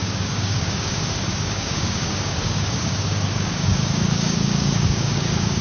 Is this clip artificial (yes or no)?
yes